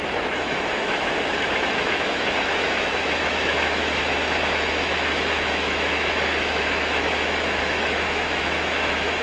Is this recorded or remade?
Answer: remade